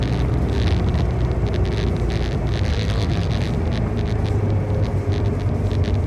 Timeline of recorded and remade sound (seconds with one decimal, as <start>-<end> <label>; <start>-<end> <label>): 0.0-2.7 recorded; 2.7-3.3 remade; 3.3-6.1 recorded

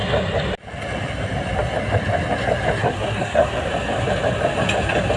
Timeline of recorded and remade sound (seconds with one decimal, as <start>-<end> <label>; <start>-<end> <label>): 0.0-2.8 recorded; 2.8-3.7 remade; 3.7-5.2 recorded

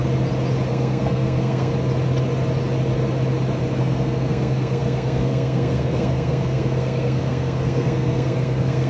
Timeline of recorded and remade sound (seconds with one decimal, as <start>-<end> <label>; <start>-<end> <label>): 0.0-0.7 recorded; 0.7-1.7 remade; 1.7-3.8 recorded; 3.8-8.9 remade

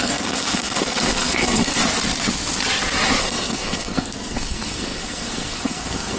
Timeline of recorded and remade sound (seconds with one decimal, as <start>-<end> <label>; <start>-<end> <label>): 0.0-1.8 remade; 1.8-3.2 recorded; 3.2-6.2 remade

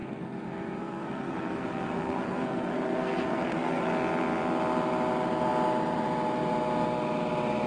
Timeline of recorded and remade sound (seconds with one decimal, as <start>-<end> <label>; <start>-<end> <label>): 0.0-3.9 remade; 3.9-7.7 recorded

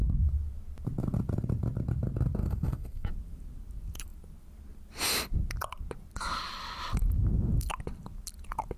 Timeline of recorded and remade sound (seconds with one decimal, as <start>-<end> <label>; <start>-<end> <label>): 0.0-2.4 recorded; 2.4-3.1 remade; 3.1-8.8 recorded

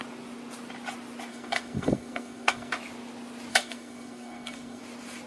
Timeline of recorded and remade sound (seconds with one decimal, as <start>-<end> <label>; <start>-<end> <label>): 0.0-1.3 recorded; 1.3-2.7 remade; 2.7-3.5 recorded; 3.5-4.8 remade; 4.8-5.3 recorded

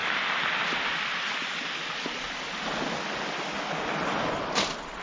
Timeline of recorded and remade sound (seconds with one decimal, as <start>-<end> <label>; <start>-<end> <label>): 0.0-5.0 recorded